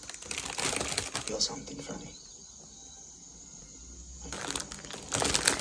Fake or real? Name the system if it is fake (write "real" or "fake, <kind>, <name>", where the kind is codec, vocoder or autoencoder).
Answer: real